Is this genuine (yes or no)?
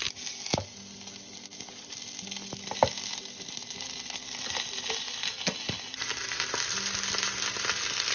yes